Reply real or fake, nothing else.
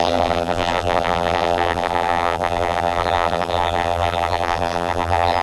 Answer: fake